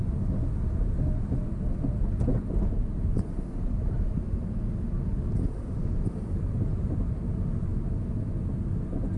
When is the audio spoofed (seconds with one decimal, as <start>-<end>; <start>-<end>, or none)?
2.3-3.1; 5.6-7.0